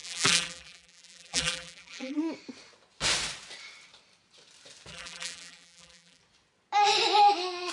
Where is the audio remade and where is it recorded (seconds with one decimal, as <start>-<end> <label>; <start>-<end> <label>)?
0.0-2.2 remade; 2.2-4.9 recorded; 4.9-6.2 remade; 6.2-7.7 recorded